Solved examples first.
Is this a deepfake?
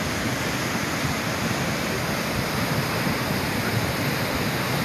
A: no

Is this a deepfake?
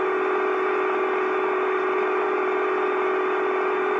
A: no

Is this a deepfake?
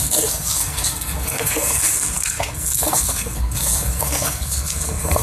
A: yes